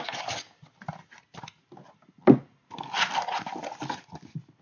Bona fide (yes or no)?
yes